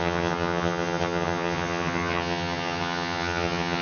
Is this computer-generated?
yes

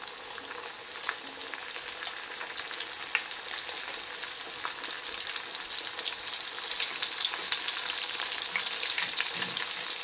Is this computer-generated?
no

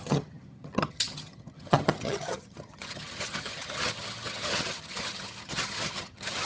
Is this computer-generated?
yes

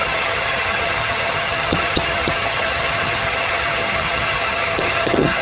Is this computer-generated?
yes